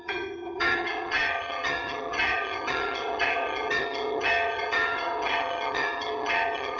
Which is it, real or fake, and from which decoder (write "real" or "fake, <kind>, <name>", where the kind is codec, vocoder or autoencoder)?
fake, vocoder, HiFi-GAN